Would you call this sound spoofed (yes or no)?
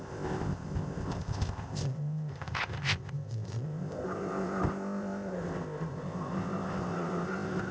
yes